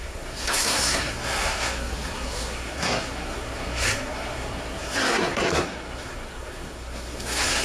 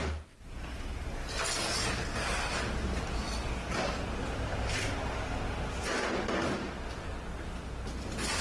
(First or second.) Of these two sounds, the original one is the second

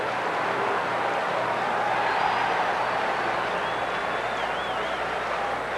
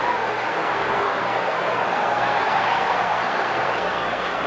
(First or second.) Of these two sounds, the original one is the first